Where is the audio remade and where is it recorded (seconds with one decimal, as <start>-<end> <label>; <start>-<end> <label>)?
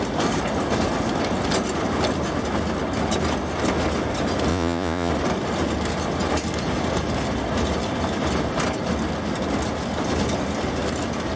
0.0-4.5 recorded; 4.5-5.1 remade; 5.1-11.4 recorded